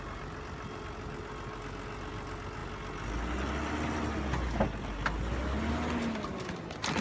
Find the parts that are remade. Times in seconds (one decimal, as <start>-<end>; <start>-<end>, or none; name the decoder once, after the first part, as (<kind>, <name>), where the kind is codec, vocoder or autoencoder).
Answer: none

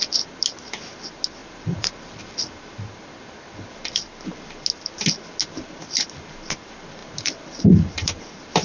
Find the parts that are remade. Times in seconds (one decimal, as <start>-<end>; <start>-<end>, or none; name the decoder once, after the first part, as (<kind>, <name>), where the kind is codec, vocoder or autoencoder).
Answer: 1.4-2.2 (vocoder, BigVGAN v2); 7.0-8.2

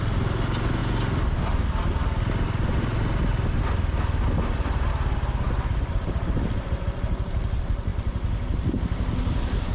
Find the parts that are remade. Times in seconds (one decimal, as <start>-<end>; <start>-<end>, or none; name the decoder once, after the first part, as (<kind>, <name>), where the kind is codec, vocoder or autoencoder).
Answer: none